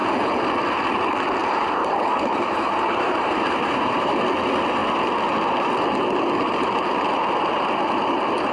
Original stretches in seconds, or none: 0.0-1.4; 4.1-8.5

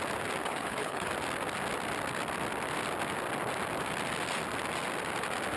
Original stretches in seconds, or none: 0.0-0.4; 1.1-5.6

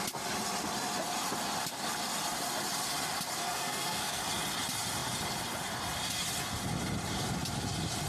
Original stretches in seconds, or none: 0.0-3.4; 4.2-8.1

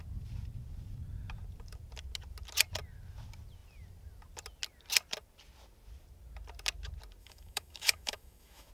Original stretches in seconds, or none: 0.0-7.2

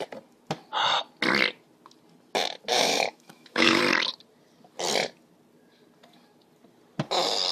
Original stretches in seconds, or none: 0.0-2.7; 3.8-7.5